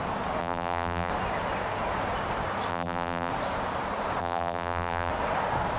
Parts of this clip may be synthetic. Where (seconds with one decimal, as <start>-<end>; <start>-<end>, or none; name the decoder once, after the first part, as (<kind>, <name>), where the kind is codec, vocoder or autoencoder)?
0.4-1.1 (vocoder, BigVGAN v2); 2.7-3.3; 4.2-5.1